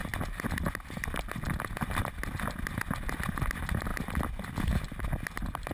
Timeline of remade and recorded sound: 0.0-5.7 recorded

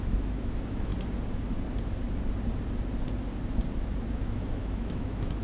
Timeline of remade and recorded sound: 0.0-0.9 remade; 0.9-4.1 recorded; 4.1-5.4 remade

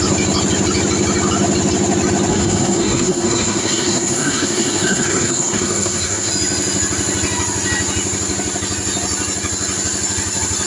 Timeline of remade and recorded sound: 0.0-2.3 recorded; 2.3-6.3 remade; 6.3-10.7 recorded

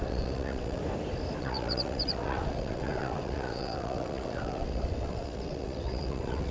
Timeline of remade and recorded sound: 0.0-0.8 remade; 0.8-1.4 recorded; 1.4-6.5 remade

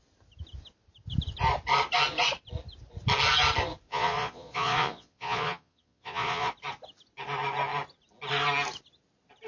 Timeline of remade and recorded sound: 0.0-3.9 recorded; 3.9-6.5 remade; 6.5-9.5 recorded

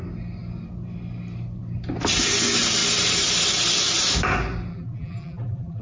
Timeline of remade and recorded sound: 0.0-4.7 recorded; 4.7-5.8 remade